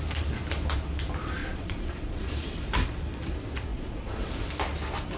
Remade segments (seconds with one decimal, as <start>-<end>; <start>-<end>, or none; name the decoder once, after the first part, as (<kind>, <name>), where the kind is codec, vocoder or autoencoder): 1.4-2.3 (vocoder, Vocos); 3.7-4.3